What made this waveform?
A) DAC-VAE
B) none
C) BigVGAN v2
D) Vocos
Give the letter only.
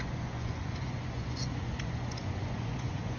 D